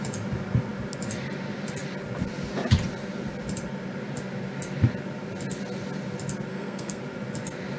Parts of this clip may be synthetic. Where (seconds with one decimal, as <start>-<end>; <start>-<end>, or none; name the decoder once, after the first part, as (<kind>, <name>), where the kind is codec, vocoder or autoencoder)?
6.5-7.0 (codec, SNAC)